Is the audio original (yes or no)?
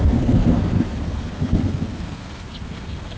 no